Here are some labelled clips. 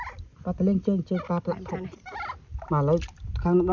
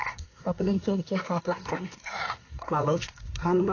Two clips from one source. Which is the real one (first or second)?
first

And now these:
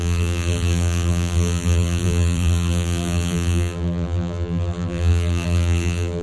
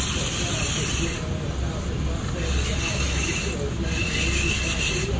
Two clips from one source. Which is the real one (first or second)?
second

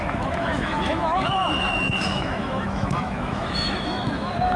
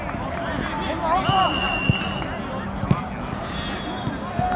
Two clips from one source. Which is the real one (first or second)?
second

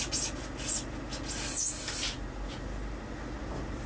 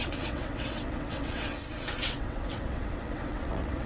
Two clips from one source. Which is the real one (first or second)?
first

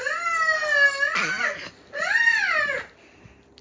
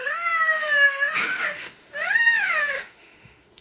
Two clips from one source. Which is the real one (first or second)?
first